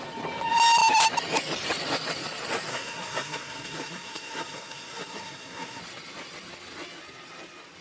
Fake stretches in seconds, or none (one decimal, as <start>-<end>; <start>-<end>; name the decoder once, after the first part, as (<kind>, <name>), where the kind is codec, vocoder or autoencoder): 2.7-5.8 (codec, SNAC)